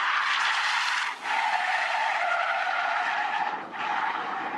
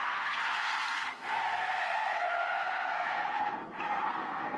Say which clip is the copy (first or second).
second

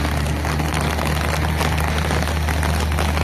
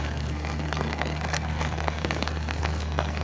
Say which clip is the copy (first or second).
second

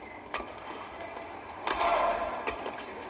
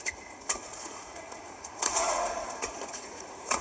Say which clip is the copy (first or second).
second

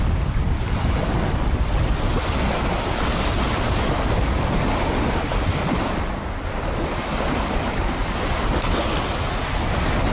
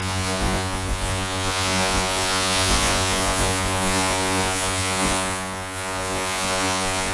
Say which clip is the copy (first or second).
second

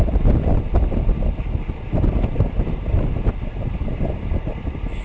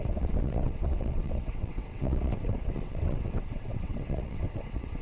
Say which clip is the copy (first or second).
second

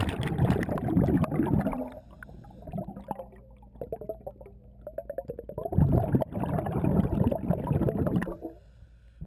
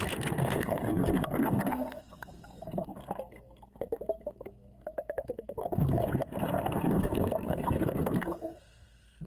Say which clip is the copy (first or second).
second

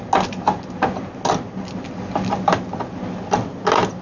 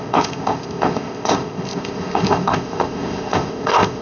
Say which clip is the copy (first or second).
second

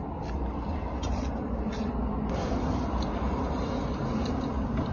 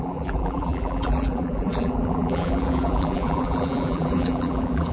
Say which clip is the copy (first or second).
second